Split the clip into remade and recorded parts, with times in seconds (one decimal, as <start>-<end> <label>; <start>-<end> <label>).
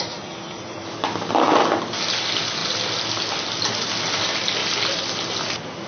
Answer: 0.0-4.6 recorded; 4.6-5.9 remade